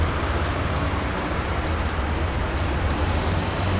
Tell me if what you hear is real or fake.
real